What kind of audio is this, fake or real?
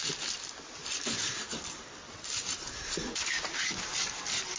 real